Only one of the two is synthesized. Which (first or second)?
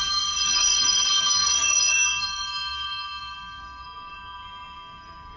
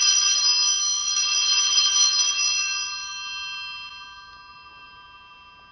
first